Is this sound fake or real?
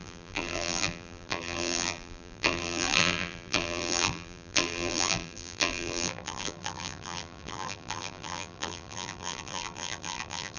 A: fake